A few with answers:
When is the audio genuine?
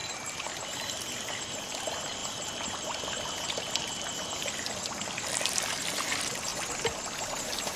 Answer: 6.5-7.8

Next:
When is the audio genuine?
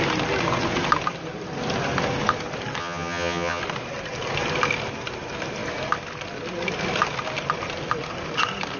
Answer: 0.0-2.8; 3.6-8.8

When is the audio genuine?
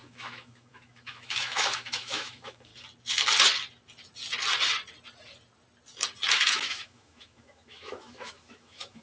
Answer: 2.7-6.3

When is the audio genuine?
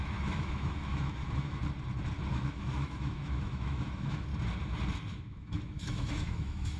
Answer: 1.6-2.3; 4.3-5.1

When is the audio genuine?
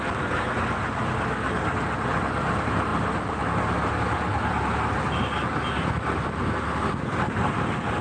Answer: 0.0-8.0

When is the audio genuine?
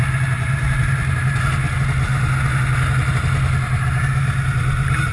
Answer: 0.0-5.1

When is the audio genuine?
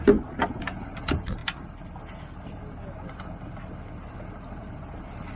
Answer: 0.0-5.4